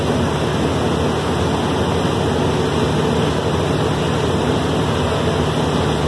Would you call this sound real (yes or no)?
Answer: yes